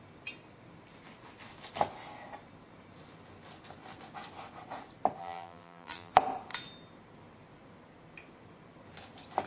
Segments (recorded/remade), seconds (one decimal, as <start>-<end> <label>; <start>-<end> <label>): 0.0-5.2 recorded; 5.2-6.1 remade; 6.1-9.5 recorded